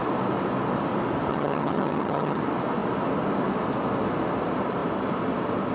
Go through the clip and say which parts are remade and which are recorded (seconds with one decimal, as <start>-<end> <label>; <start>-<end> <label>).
0.0-1.3 recorded; 1.3-2.4 remade; 2.4-5.7 recorded

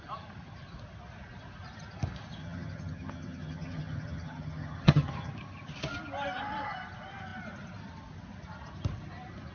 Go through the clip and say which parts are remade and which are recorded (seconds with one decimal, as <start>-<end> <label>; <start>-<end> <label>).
0.0-2.4 recorded; 2.4-5.3 remade; 5.3-9.5 recorded

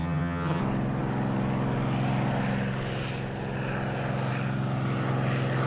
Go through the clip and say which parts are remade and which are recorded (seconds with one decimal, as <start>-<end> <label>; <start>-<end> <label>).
0.0-0.6 remade; 0.6-5.7 recorded

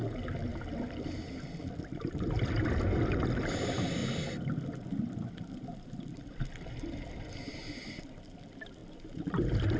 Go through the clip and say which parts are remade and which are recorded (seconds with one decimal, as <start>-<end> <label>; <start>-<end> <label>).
0.0-9.8 recorded